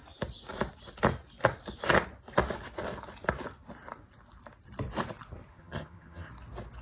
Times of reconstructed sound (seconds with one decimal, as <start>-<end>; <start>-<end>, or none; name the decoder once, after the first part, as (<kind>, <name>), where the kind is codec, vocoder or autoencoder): 5.5-6.3 (vocoder, HiFi-GAN)